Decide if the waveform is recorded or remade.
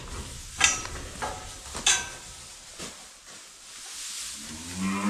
recorded